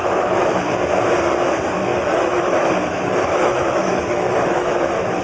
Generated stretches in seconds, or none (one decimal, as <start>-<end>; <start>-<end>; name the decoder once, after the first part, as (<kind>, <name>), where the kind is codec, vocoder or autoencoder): 0.0-0.6 (autoencoder, DAC-VAE); 1.9-5.2